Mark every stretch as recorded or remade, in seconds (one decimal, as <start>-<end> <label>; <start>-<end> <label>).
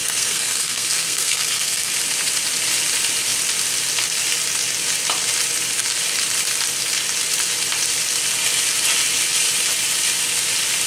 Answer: 0.0-1.9 remade; 1.9-10.9 recorded